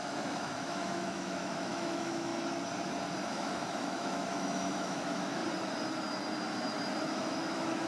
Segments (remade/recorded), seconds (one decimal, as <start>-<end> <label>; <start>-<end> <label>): 0.0-2.3 remade; 2.3-3.3 recorded; 3.3-5.4 remade; 5.4-7.1 recorded; 7.1-7.9 remade